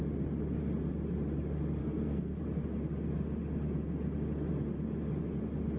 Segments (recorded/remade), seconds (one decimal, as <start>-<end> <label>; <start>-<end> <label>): 0.0-1.8 recorded; 1.8-2.4 remade; 2.4-5.8 recorded